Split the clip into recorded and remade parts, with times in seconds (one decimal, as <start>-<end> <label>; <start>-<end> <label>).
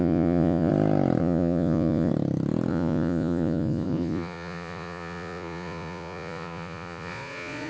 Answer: 0.0-0.7 remade; 0.7-1.2 recorded; 1.2-2.1 remade; 2.1-2.7 recorded; 2.7-7.7 remade